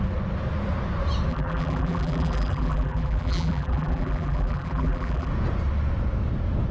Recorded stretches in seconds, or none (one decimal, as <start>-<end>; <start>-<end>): 0.0-1.3; 5.3-6.7